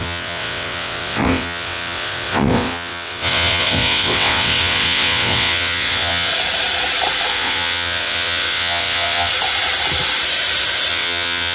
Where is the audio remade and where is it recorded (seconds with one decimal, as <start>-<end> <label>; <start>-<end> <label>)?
0.0-6.3 remade; 6.3-7.3 recorded; 7.3-9.3 remade; 9.3-10.9 recorded; 10.9-11.5 remade